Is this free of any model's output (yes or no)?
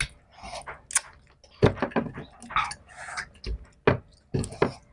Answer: yes